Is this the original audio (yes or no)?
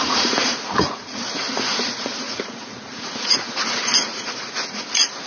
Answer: no